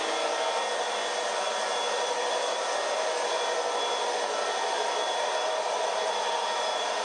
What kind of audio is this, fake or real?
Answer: real